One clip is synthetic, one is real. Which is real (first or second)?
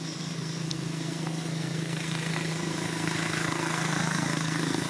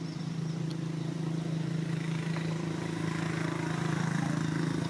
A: second